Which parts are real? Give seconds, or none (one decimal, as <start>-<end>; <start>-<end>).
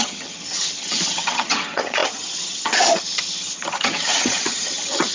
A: none